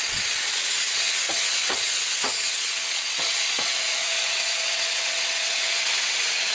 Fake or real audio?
fake